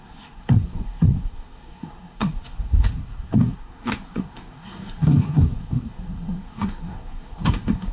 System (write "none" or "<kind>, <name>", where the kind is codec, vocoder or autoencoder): codec, SNAC